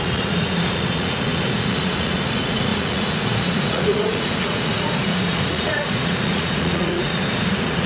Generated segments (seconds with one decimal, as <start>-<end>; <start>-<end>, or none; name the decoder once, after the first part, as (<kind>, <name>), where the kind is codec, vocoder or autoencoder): 0.0-7.9 (vocoder, Vocos)